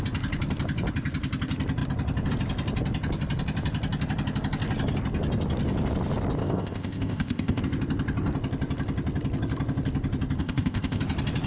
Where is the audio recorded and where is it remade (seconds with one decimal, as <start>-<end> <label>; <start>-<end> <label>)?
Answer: 0.0-6.4 recorded; 6.4-7.6 remade; 7.6-10.4 recorded; 10.4-11.0 remade; 11.0-11.5 recorded